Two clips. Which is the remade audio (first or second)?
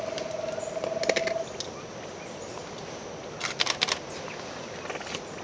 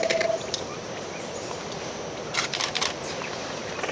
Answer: second